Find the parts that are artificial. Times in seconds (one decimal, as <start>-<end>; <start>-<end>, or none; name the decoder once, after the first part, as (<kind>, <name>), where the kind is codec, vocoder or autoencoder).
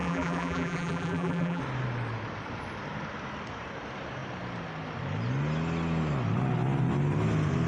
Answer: 0.0-1.6 (vocoder, BigVGAN v2)